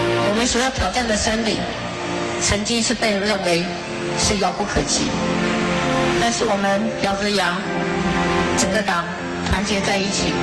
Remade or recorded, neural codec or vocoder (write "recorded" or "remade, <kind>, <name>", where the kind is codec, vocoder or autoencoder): remade, codec, SNAC